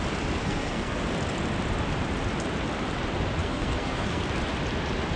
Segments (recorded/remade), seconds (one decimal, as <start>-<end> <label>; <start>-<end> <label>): 0.0-0.4 recorded; 0.4-1.0 remade; 1.0-3.4 recorded; 3.4-4.2 remade; 4.2-5.2 recorded